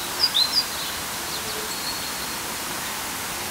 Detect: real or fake real